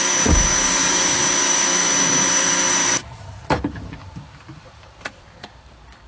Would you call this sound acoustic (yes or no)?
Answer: no